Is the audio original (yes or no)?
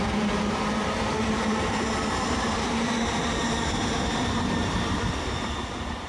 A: no